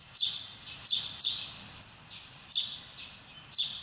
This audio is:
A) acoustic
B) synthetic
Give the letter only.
A